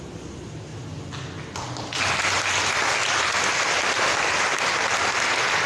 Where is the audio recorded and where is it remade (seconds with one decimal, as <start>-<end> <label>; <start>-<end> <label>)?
0.0-5.7 recorded